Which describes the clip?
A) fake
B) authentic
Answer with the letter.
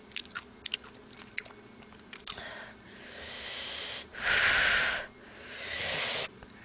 B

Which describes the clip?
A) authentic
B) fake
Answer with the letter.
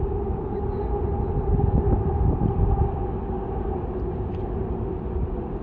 A